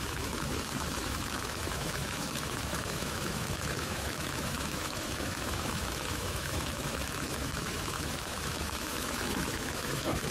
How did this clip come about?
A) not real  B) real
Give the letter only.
A